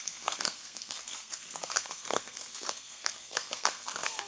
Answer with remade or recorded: remade